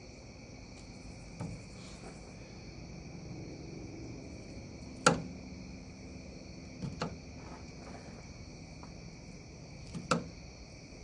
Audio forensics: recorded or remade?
recorded